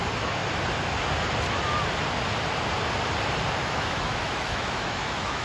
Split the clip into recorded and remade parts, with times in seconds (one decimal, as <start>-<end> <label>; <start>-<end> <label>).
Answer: 0.0-0.4 remade; 0.4-3.6 recorded; 3.6-5.4 remade